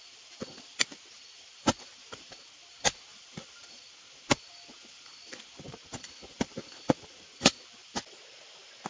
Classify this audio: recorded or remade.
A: recorded